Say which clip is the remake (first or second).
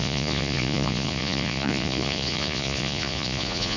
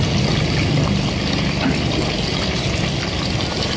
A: first